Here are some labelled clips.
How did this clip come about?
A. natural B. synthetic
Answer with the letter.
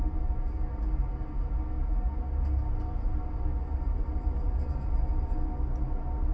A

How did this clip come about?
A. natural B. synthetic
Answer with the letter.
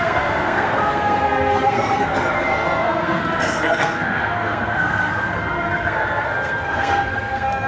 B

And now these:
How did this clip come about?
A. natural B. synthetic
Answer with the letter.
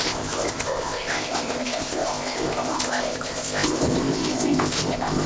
B